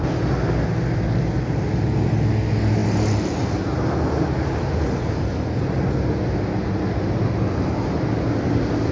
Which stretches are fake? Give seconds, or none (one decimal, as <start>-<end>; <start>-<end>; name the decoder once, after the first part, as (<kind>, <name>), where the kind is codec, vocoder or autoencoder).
none